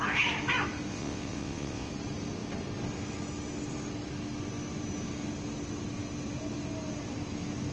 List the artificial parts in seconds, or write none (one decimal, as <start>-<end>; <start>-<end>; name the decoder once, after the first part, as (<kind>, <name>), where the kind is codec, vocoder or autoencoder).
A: 0.9-1.9 (vocoder, WaveNeXt)